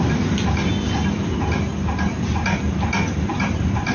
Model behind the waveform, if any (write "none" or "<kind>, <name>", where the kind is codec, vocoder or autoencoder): none